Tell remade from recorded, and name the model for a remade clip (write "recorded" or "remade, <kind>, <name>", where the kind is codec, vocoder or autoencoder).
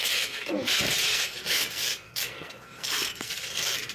remade, codec, SNAC